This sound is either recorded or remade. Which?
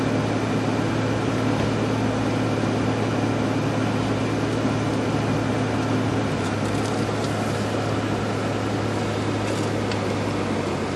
recorded